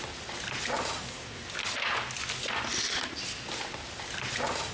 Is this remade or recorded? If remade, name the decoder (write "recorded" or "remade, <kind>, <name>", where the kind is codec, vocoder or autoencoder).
recorded